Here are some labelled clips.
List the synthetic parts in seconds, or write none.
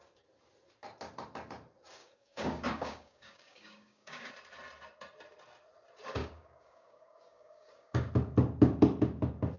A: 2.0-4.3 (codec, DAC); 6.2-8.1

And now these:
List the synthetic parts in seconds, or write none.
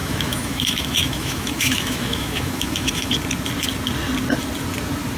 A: 0.0-3.1 (autoencoder, DAC-VAE)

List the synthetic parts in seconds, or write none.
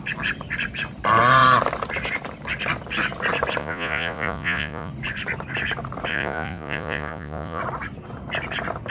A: 3.6-4.9 (vocoder, Vocos); 6.1-7.6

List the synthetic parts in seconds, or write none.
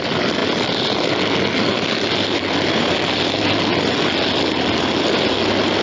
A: none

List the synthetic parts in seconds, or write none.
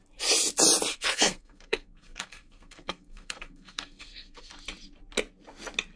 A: 0.9-4.5 (codec, SNAC)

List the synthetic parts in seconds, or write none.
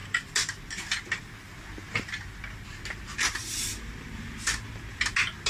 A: none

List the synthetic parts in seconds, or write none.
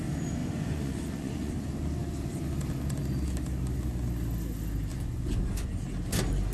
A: 0.4-1.5 (vocoder, Vocos); 4.9-5.7